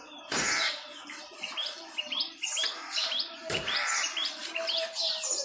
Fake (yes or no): yes